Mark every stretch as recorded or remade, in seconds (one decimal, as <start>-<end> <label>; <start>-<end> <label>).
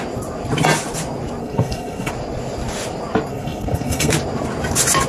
0.0-1.4 recorded; 1.4-2.1 remade; 2.1-3.3 recorded; 3.3-4.1 remade; 4.1-5.1 recorded